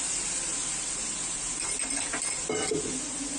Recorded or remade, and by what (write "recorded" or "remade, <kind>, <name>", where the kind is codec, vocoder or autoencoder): recorded